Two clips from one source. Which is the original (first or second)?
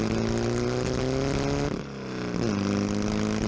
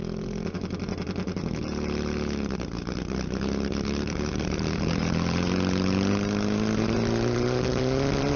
first